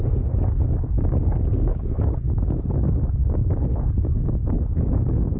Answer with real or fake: fake